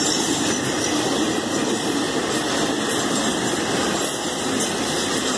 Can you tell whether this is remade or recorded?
recorded